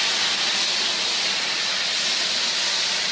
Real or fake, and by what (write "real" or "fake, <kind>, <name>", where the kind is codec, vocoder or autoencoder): real